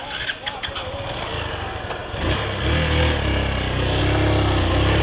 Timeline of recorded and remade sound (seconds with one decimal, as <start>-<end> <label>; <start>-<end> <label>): 0.0-5.0 recorded